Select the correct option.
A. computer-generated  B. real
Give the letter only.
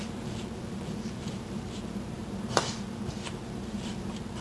A